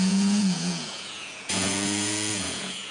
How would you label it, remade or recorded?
remade